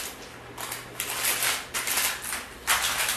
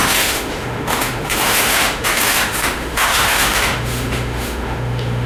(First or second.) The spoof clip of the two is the second